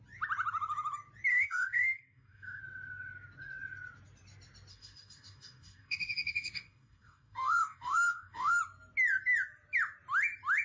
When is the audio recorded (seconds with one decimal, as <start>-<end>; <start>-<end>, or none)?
0.0-1.3; 2.6-4.7; 8.6-10.6